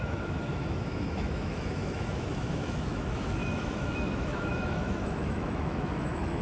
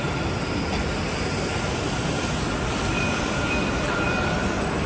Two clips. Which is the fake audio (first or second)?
first